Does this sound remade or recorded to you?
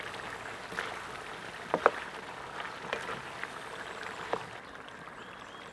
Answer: recorded